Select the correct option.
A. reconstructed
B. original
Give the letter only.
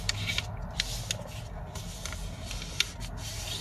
B